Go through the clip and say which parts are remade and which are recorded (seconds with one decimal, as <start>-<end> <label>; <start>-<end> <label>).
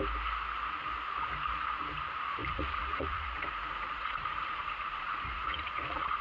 0.0-2.4 recorded; 2.4-6.2 remade